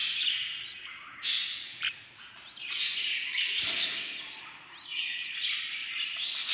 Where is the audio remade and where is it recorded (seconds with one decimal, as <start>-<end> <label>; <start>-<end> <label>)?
0.0-6.5 recorded